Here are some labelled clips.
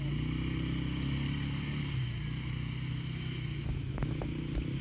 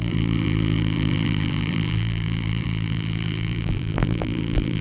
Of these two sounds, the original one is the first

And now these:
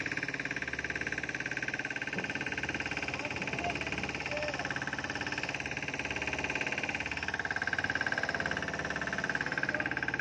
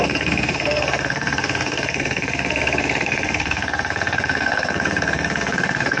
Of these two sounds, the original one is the first